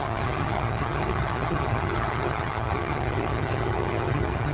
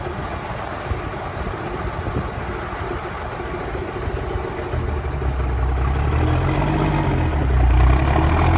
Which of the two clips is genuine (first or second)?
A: second